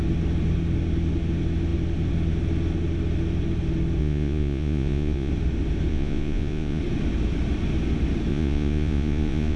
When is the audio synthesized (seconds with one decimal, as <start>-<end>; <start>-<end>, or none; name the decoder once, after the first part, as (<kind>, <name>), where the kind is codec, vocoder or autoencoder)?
4.0-5.3 (vocoder, Vocos); 5.9-6.8; 8.3-9.6